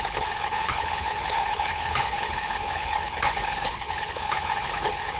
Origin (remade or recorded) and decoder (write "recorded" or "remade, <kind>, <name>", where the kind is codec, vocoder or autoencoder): remade, codec, HILCodec